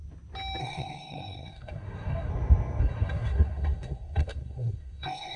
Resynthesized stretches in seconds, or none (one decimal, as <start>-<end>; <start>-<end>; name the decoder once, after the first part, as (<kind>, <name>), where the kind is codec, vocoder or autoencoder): 0.6-2.3 (codec, SNAC); 2.8-5.4